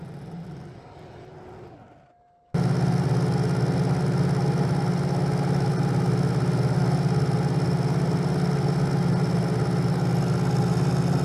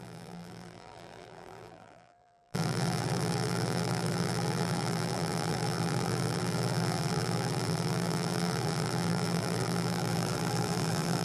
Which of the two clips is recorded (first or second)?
first